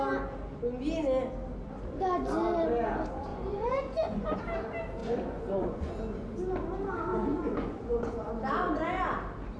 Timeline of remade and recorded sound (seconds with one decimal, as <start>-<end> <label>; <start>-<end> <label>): 0.0-3.3 recorded; 3.3-4.4 remade; 4.4-5.0 recorded; 5.0-5.9 remade; 5.9-7.1 recorded; 7.1-8.3 remade; 8.3-9.6 recorded

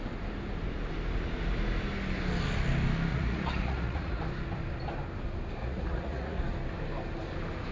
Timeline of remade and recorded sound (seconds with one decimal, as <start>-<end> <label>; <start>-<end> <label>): 0.0-3.1 recorded; 3.1-4.2 remade; 4.2-5.6 recorded; 5.6-6.4 remade; 6.4-7.7 recorded

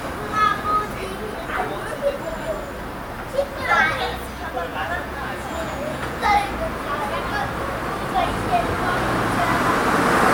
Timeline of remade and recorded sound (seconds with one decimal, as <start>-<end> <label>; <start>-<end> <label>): 0.0-4.7 recorded; 4.7-6.3 remade; 6.3-10.3 recorded